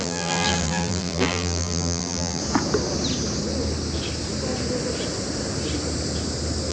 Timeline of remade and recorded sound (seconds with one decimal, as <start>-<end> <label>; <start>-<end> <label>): 0.0-2.4 remade; 2.4-6.7 recorded